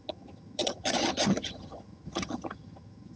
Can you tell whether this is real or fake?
fake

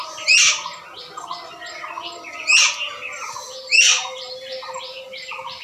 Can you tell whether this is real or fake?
real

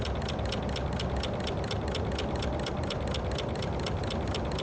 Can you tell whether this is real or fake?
real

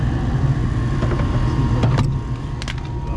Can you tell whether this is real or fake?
real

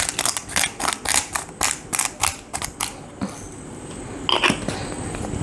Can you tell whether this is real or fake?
real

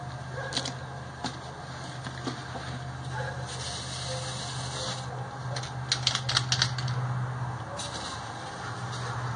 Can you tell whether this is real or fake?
real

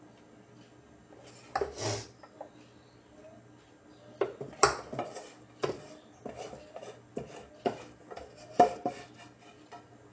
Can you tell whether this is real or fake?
real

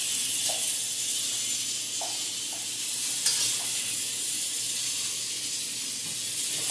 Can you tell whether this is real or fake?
real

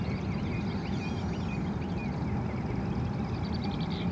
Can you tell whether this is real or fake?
real